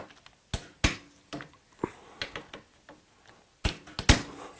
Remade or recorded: recorded